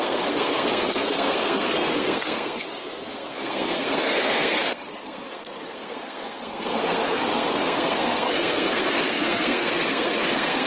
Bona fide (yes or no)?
no